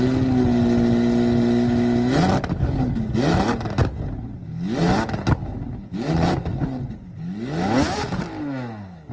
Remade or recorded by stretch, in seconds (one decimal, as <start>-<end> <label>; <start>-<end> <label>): 0.0-9.1 recorded